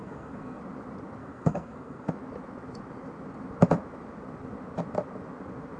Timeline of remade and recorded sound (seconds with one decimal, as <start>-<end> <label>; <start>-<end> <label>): 0.0-0.6 remade; 0.6-1.2 recorded; 1.2-2.1 remade; 2.1-5.8 recorded